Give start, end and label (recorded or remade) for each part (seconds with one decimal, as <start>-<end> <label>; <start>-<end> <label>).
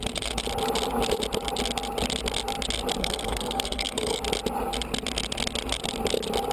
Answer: 0.0-3.0 recorded; 3.0-4.2 remade; 4.2-6.5 recorded